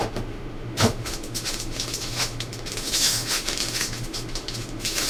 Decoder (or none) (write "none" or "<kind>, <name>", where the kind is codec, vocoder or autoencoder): autoencoder, DAC-VAE